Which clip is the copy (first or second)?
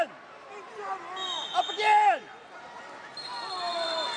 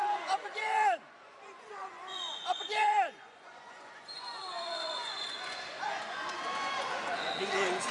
second